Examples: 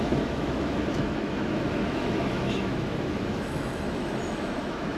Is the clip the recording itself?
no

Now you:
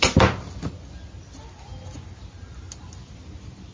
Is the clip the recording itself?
yes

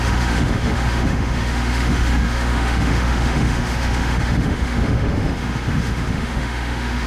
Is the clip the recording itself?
no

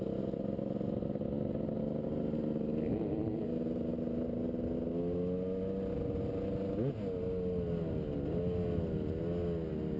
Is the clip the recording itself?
yes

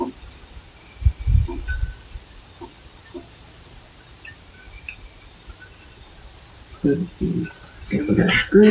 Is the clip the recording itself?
yes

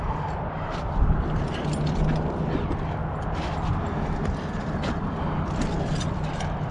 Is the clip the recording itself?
yes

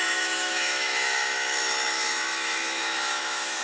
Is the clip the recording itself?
no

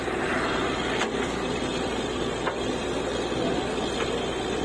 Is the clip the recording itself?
yes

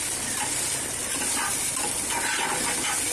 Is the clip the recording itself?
yes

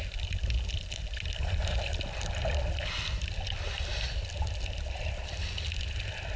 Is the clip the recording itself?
yes